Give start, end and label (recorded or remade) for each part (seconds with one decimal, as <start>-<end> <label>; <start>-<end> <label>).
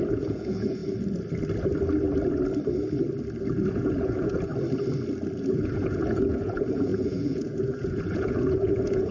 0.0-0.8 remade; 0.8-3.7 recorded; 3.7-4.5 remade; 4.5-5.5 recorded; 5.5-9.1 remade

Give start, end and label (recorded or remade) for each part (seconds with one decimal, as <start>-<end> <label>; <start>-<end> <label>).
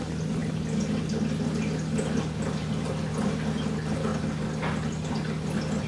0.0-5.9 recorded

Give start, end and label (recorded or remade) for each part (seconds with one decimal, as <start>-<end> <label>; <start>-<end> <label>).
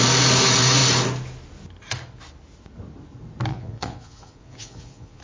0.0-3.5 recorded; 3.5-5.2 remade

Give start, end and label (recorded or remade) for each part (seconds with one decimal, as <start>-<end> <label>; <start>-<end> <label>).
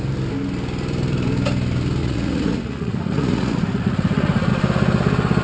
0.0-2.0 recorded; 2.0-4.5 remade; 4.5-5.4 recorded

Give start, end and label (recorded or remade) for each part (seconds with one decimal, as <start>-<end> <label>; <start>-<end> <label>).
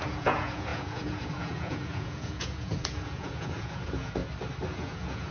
0.0-4.2 remade; 4.2-4.7 recorded; 4.7-5.3 remade